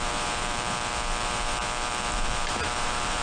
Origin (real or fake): fake